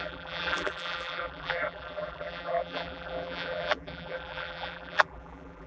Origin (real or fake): fake